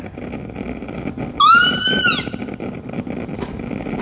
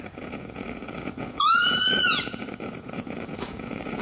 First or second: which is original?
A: first